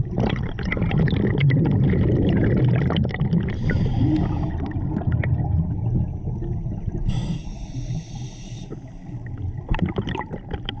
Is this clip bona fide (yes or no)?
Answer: yes